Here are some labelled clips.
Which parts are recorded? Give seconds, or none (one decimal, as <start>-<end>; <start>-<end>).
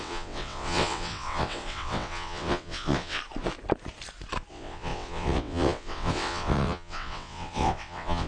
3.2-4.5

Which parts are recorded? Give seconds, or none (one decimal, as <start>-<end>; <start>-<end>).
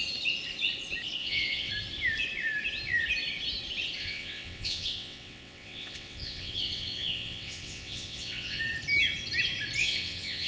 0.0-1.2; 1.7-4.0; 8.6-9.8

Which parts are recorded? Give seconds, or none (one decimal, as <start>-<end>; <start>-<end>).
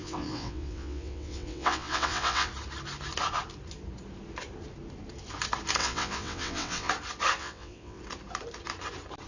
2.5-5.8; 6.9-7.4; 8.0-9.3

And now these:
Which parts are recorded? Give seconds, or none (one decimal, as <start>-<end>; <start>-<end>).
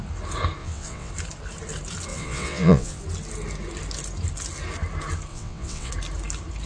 0.0-0.6; 1.1-2.1; 3.0-5.3; 5.9-6.7